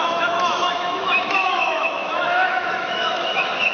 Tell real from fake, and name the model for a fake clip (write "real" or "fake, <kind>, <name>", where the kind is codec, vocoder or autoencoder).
fake, autoencoder, DAC-VAE